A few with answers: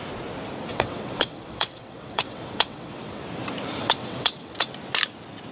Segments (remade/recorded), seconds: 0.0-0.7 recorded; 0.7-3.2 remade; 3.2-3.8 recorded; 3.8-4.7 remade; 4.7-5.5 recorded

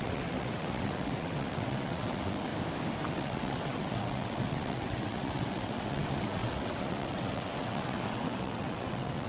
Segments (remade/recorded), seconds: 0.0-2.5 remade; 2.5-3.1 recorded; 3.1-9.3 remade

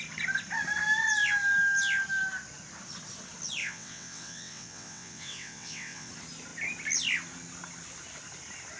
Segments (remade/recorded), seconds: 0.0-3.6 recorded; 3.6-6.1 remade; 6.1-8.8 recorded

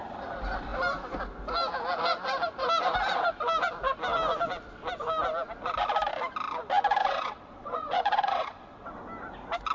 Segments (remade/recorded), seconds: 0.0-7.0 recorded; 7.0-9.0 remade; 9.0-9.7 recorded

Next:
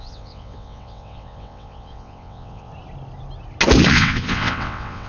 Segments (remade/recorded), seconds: 0.0-2.7 remade; 2.7-3.9 recorded; 3.9-5.1 remade